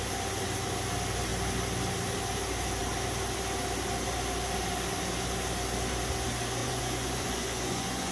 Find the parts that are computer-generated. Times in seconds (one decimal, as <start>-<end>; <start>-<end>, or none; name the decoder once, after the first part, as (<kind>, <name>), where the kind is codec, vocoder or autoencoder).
6.6-8.1 (vocoder, Vocos)